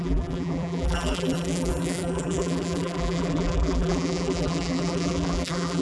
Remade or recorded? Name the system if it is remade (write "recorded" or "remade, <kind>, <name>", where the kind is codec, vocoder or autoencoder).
remade, vocoder, BigVGAN v2